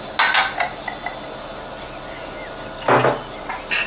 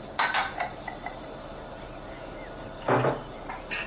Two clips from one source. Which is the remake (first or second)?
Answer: second